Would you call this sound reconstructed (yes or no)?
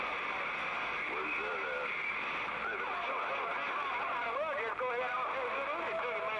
no